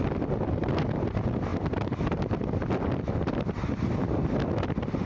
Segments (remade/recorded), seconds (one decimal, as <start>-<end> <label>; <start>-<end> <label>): 0.0-1.5 recorded; 1.5-4.0 remade; 4.0-5.1 recorded